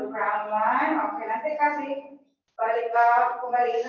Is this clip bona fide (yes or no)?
yes